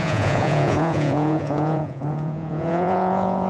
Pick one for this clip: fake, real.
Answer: fake